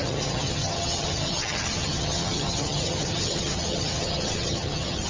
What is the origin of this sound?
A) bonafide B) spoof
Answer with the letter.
B